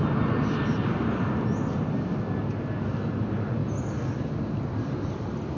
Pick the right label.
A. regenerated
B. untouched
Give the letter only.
B